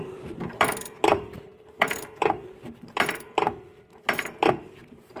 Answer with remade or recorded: remade